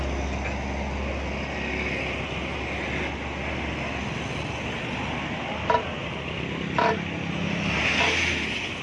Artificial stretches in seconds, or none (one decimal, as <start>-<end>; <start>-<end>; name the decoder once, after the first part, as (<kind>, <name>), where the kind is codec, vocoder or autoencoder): none